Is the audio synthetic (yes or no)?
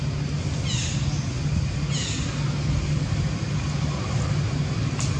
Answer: no